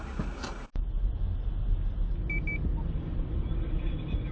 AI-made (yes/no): no